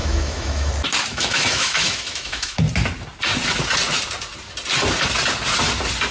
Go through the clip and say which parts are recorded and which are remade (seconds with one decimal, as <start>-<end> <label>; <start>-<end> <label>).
0.0-0.7 remade; 0.7-1.1 recorded; 1.1-2.6 remade; 2.6-6.1 recorded